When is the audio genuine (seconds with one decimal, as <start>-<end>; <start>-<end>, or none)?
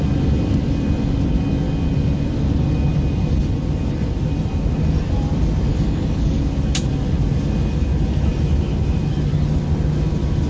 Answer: 0.0-5.7; 6.4-10.5